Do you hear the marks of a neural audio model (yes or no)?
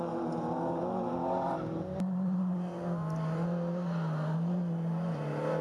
no